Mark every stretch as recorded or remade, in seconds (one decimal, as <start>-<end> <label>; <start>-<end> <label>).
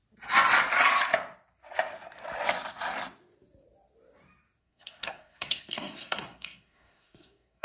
0.0-4.6 recorded; 4.6-7.6 remade